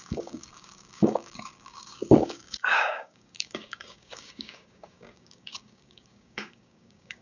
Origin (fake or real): fake